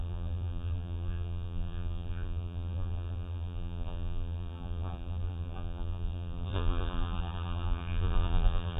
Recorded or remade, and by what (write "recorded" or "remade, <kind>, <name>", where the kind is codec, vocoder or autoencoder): remade, vocoder, BigVGAN v2